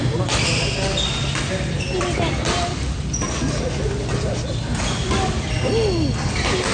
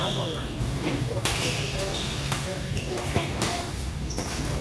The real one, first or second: first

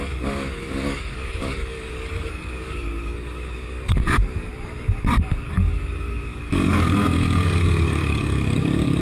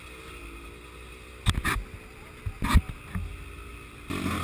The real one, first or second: second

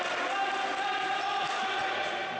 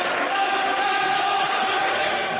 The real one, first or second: first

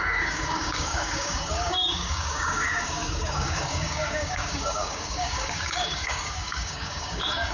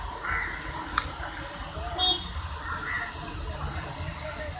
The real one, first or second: second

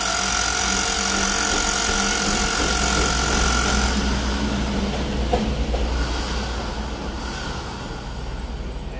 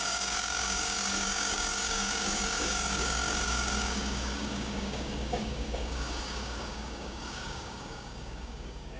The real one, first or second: first